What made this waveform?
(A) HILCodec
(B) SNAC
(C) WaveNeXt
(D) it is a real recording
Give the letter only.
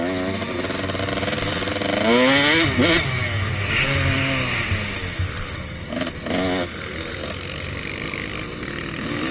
D